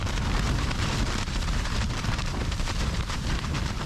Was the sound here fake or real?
fake